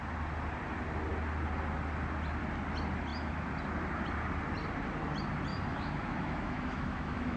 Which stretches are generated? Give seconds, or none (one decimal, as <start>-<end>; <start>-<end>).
5.5-7.4